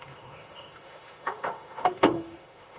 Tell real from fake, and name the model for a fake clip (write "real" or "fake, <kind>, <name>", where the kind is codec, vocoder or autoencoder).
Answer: fake, autoencoder, DAC-VAE